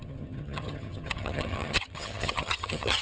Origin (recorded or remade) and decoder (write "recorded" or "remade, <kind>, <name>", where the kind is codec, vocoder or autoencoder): remade, vocoder, HiFi-GAN